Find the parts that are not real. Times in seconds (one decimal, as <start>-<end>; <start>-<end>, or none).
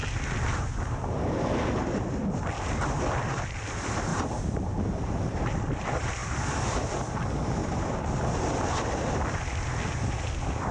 4.1-5.6; 7.6-8.1